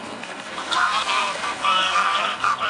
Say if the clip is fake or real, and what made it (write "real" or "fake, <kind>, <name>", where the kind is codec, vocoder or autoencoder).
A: fake, codec, SNAC